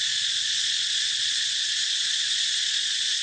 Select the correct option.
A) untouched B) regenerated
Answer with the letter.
B